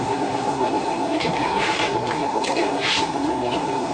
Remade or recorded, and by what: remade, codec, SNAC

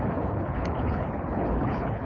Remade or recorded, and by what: remade, codec, HILCodec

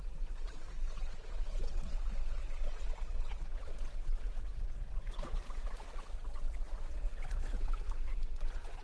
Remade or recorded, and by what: remade, vocoder, Vocos